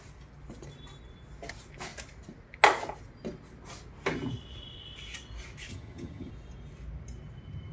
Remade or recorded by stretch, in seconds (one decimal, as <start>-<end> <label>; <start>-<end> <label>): 0.0-5.7 recorded; 5.7-6.3 remade; 6.3-7.7 recorded